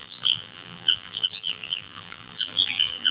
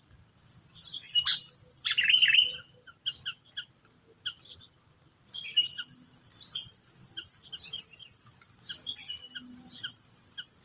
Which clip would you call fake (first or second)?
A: first